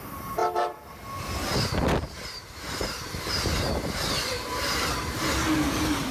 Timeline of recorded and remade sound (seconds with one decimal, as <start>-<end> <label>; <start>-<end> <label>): 0.0-6.1 recorded